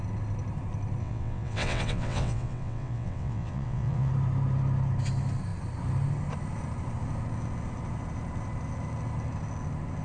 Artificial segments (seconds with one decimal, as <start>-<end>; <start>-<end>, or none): 1.0-4.1